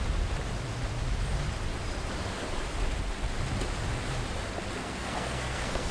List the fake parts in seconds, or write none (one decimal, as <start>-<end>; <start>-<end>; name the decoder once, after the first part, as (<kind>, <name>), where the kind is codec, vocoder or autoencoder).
4.8-5.9 (codec, SNAC)